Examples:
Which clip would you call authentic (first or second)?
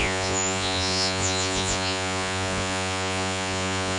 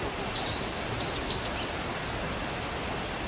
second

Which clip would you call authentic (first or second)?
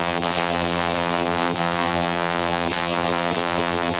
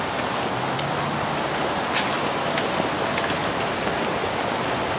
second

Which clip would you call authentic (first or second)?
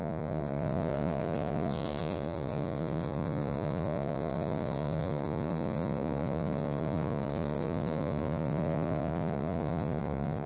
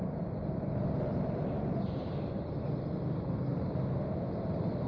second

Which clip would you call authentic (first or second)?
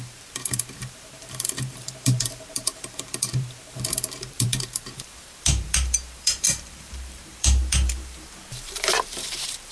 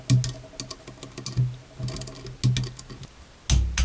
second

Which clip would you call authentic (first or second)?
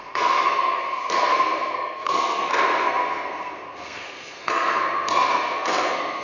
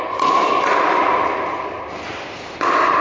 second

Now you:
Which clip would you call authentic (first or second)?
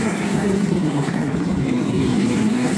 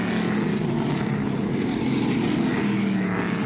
second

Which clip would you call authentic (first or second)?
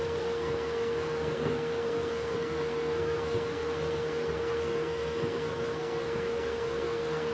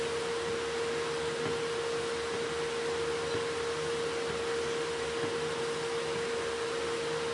second